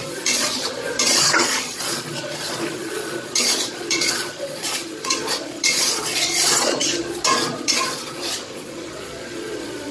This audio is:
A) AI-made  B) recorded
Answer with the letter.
A